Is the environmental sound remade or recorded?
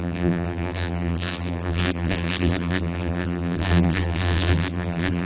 remade